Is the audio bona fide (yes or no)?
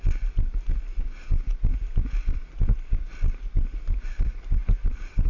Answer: yes